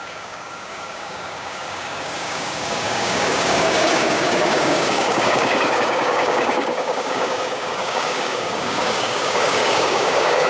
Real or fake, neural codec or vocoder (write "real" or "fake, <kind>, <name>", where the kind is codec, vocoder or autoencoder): fake, codec, DAC